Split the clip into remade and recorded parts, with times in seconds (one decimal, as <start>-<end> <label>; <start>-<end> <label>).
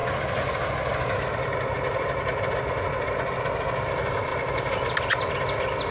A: 0.0-2.4 remade; 2.4-4.3 recorded; 4.3-5.3 remade; 5.3-5.9 recorded